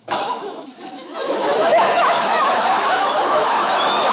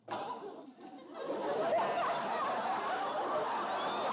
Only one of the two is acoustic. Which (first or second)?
second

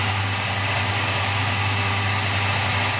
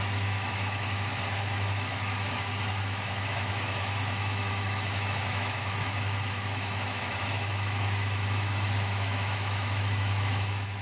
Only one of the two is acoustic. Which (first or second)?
first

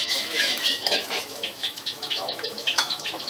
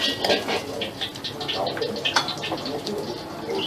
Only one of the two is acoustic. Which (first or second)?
second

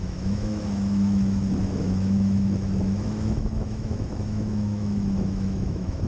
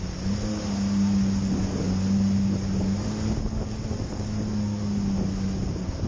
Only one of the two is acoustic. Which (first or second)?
second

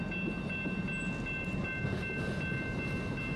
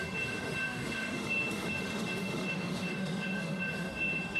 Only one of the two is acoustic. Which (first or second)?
first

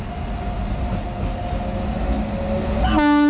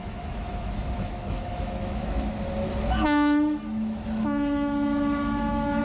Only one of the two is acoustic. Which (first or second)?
first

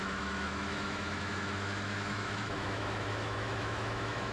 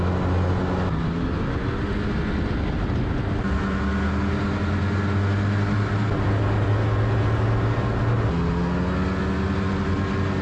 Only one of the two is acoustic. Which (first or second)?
second